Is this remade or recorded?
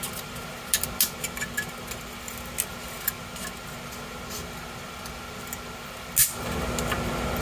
recorded